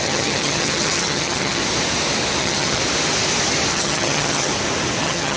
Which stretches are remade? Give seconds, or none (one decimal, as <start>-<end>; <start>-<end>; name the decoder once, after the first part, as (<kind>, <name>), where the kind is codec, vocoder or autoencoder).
0.0-1.6 (vocoder, HiFi-GAN); 2.4-2.8; 3.7-4.5; 5.0-5.4